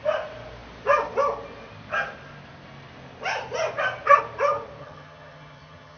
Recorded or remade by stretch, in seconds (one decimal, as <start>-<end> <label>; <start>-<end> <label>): 0.0-4.8 recorded; 4.8-6.0 remade

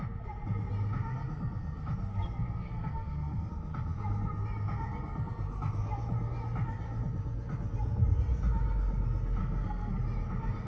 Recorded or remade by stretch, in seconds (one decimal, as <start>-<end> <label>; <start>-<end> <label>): 0.0-2.1 recorded; 2.1-3.5 remade; 3.5-9.4 recorded; 9.4-10.0 remade; 10.0-10.7 recorded

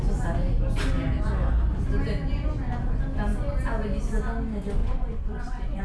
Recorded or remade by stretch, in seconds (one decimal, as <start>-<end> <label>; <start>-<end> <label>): 0.0-4.8 recorded; 4.8-5.8 remade

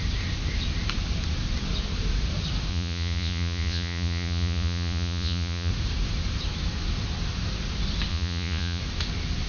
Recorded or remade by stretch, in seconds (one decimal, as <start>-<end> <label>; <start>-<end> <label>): 0.0-2.7 recorded; 2.7-5.7 remade; 5.7-8.1 recorded; 8.1-8.8 remade; 8.8-9.5 recorded